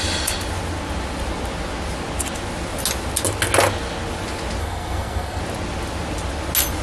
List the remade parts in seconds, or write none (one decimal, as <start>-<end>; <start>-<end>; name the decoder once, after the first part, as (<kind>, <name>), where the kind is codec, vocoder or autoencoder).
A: 4.6-5.4 (codec, SNAC)